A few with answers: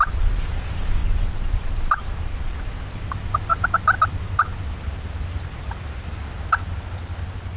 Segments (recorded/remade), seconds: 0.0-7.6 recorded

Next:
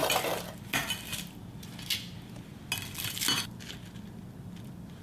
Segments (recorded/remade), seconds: 0.0-5.0 recorded

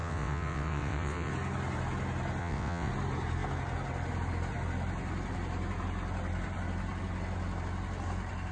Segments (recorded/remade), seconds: 0.0-1.3 remade; 1.3-2.4 recorded; 2.4-2.9 remade; 2.9-8.5 recorded

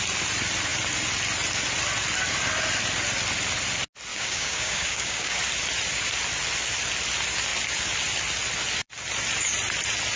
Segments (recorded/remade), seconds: 0.0-4.1 recorded; 4.1-5.4 remade; 5.4-10.2 recorded

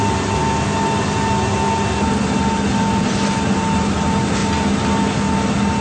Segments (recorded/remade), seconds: 0.0-0.4 remade; 0.4-3.9 recorded; 3.9-4.4 remade; 4.4-5.3 recorded; 5.3-5.8 remade

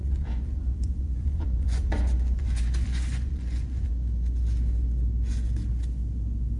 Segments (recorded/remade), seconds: 0.0-3.9 remade; 3.9-6.6 recorded